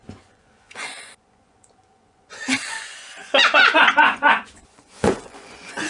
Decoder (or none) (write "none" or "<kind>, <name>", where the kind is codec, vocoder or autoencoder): vocoder, Vocos